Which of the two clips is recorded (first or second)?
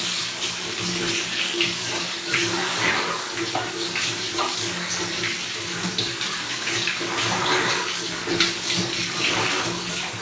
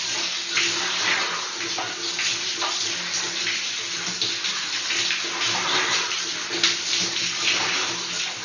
second